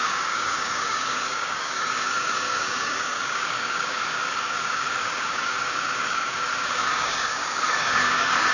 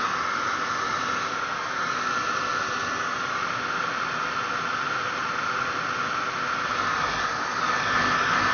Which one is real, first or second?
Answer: second